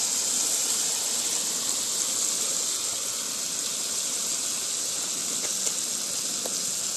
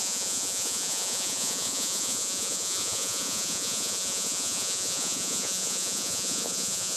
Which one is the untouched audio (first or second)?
first